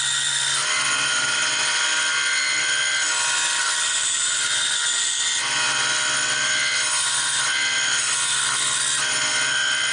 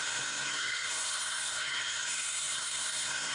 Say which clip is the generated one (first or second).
second